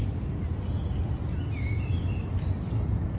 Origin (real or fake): real